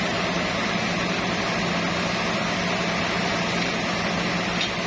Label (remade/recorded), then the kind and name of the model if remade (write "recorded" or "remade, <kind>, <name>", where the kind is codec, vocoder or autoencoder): recorded